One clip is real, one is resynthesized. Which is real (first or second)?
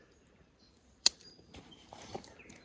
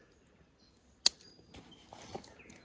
second